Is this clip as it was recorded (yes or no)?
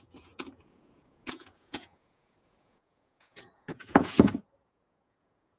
no